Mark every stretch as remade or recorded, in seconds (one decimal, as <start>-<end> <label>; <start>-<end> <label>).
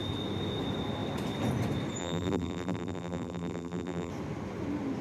0.0-2.0 recorded; 2.0-4.1 remade; 4.1-5.0 recorded